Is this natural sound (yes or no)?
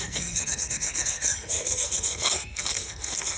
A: no